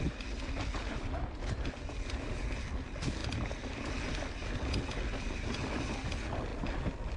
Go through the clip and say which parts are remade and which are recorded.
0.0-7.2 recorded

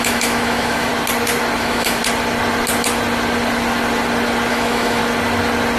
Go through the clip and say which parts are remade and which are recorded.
0.0-0.9 remade; 0.9-1.6 recorded; 1.6-2.0 remade; 2.0-4.5 recorded; 4.5-5.0 remade; 5.0-5.8 recorded

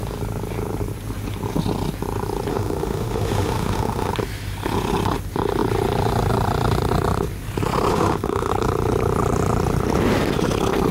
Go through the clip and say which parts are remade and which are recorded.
0.0-2.5 recorded; 2.5-4.1 remade; 4.1-7.9 recorded; 7.9-8.5 remade; 8.5-10.9 recorded

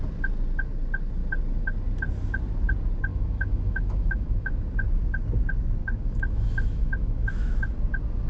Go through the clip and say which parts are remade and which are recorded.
0.0-3.1 recorded; 3.1-4.5 remade; 4.5-5.8 recorded; 5.8-7.7 remade; 7.7-8.3 recorded